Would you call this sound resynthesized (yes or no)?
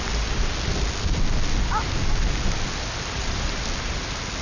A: no